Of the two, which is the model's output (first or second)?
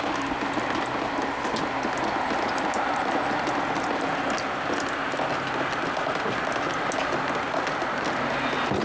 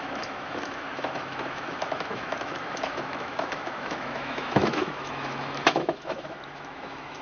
second